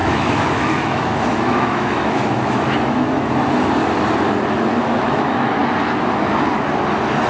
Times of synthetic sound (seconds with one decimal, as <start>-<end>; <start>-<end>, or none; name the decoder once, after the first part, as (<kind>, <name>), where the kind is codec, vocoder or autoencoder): 0.0-3.3 (autoencoder, DAC-VAE); 4.7-5.6